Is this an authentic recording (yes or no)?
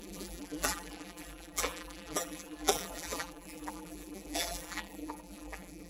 no